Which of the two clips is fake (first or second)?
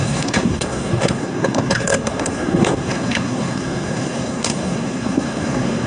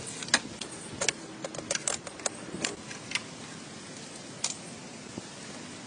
first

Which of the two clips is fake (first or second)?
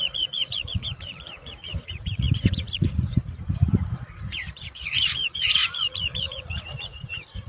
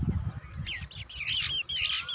first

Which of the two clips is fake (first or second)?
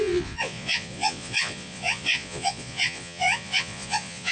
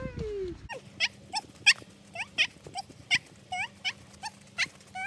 first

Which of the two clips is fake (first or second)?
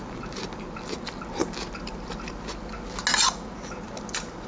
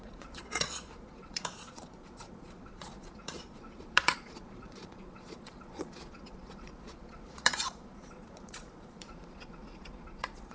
second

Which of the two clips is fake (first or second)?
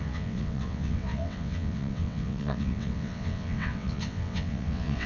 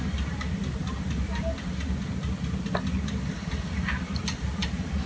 first